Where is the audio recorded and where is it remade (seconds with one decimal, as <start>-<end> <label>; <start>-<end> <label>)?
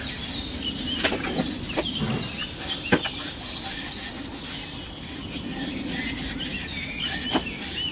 0.0-2.4 recorded; 2.4-3.6 remade; 3.6-4.3 recorded; 4.3-5.7 remade; 5.7-7.9 recorded